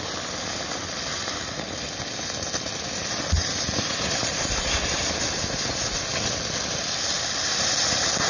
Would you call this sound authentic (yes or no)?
yes